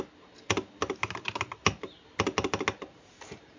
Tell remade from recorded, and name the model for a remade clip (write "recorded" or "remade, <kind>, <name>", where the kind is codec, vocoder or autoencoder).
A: recorded